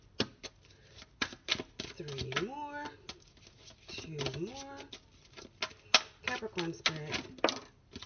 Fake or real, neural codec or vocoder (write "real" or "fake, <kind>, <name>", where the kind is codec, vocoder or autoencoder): real